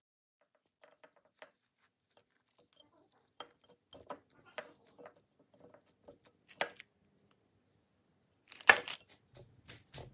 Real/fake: real